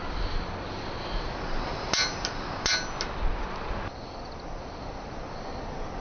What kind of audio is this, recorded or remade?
recorded